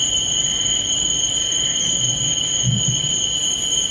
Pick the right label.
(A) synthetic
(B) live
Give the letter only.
B